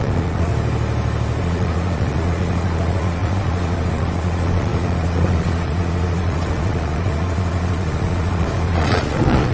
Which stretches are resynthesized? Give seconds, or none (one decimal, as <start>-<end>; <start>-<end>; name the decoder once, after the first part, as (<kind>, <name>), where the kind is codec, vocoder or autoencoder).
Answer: 0.0-0.5 (vocoder, Vocos); 1.4-9.5